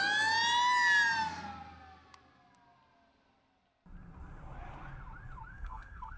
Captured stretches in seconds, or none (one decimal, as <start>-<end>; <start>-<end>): 0.0-5.5